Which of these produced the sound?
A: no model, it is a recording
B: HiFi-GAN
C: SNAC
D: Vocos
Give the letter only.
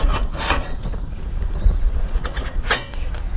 D